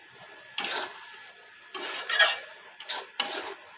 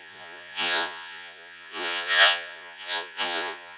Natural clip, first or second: first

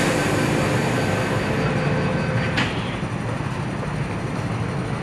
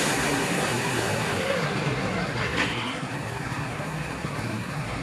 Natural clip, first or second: first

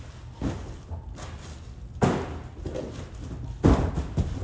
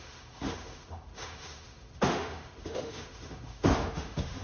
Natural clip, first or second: first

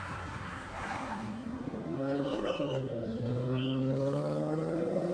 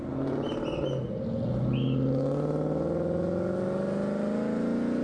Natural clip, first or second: second